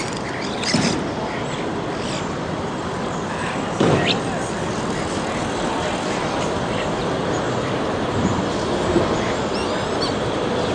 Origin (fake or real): real